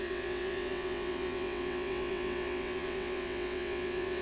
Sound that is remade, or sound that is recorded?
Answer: remade